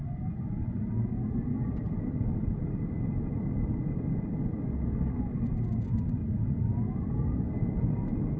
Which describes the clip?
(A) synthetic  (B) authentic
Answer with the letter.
B